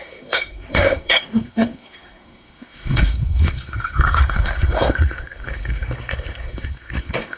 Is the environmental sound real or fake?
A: fake